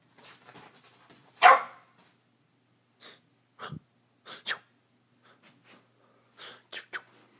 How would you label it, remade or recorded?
recorded